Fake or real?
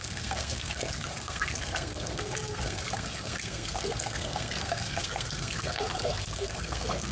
fake